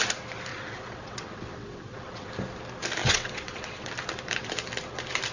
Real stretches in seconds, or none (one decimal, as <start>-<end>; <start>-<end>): 0.0-0.5; 2.3-3.0; 3.9-5.3